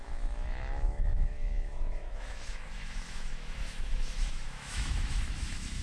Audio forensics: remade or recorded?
remade